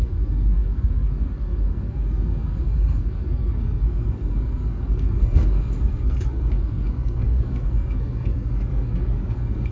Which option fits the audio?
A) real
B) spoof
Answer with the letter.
B